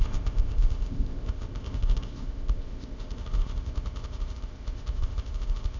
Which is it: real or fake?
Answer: fake